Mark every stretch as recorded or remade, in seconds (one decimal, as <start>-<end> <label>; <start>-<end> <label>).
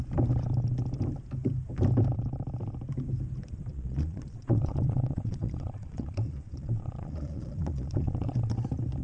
0.0-3.7 recorded; 3.7-8.6 remade; 8.6-9.0 recorded